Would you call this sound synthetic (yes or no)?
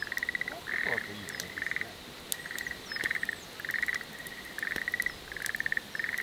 no